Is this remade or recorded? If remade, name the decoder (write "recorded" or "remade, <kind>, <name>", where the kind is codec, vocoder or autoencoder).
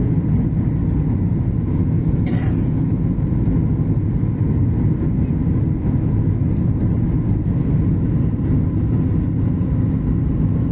recorded